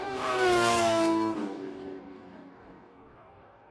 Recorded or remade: remade